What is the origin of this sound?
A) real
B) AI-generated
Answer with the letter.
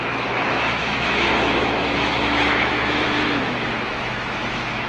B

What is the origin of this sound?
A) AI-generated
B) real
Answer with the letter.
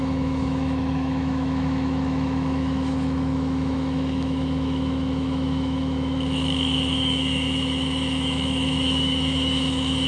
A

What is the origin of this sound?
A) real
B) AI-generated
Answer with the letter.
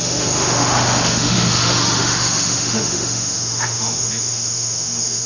B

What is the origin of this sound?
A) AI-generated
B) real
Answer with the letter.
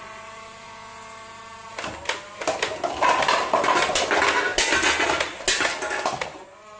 B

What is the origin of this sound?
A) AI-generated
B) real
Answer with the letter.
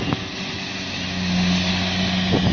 B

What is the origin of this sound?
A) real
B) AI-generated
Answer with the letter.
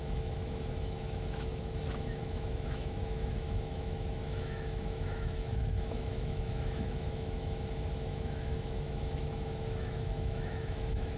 B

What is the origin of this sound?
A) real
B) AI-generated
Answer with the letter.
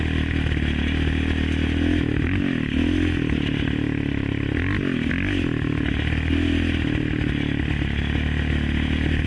A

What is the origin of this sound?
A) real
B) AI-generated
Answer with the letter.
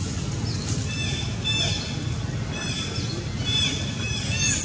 A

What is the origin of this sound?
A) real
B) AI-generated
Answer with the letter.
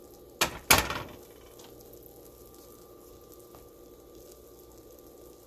A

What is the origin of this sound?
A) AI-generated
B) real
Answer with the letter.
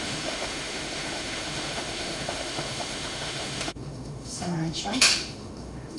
A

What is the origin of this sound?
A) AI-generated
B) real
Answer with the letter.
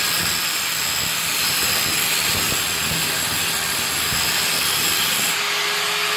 B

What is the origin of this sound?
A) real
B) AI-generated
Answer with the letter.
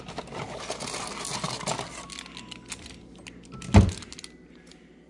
A